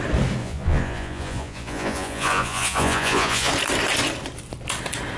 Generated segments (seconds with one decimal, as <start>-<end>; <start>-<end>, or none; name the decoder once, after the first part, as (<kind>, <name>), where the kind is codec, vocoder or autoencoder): 0.4-3.5 (vocoder, Vocos)

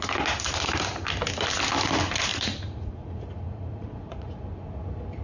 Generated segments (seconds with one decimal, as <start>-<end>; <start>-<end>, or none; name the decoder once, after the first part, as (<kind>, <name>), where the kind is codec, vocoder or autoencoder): 2.3-4.4 (vocoder, Vocos)

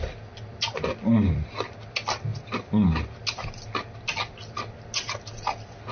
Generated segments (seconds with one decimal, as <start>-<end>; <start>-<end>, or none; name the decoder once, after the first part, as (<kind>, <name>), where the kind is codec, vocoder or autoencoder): none

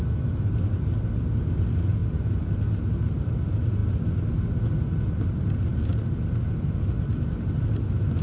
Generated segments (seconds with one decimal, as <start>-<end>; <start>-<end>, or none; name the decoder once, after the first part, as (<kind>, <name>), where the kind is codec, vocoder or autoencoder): none

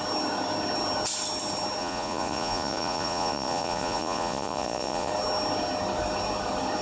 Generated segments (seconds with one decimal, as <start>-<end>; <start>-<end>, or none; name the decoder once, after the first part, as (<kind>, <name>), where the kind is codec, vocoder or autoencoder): 1.8-5.1 (vocoder, Vocos)